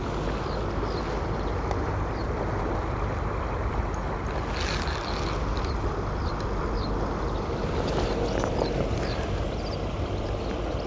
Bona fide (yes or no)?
yes